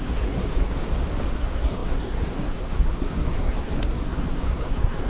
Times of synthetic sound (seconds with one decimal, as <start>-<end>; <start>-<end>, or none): 0.0-0.7; 1.3-5.1